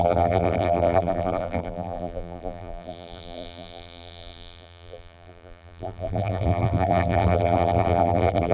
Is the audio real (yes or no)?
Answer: no